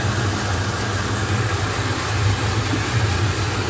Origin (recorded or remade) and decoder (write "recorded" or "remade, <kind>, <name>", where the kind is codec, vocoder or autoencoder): recorded